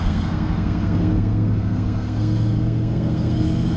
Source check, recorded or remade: remade